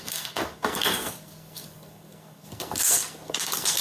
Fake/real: fake